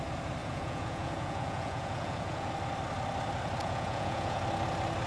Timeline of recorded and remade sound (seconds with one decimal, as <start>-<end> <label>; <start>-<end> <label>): 0.0-0.4 recorded; 0.4-2.5 remade; 2.5-3.6 recorded; 3.6-4.4 remade; 4.4-5.1 recorded